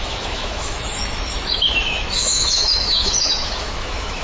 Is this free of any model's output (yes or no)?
no